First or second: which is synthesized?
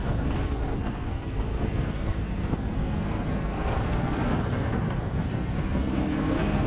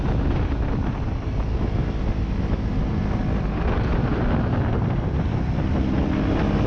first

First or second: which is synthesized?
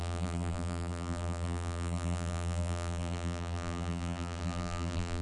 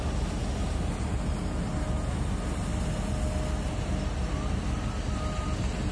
first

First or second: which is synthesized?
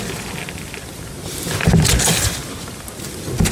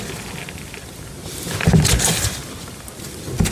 second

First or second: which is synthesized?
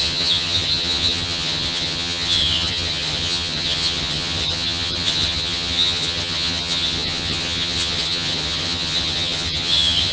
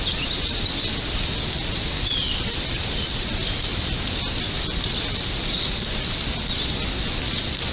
first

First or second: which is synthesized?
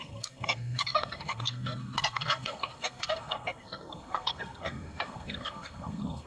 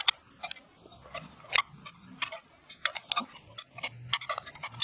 first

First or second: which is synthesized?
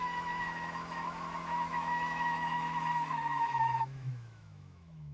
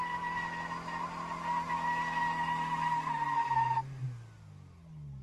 first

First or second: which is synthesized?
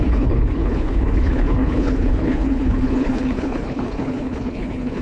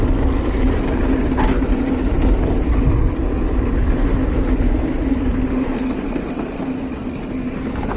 first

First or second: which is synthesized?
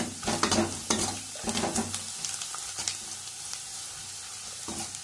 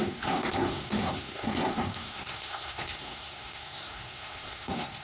second